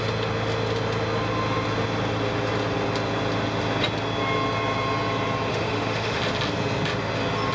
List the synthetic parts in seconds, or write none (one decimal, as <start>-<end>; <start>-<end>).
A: 5.5-6.2